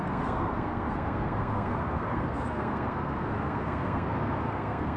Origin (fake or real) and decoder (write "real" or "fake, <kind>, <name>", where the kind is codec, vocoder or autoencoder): fake, codec, SNAC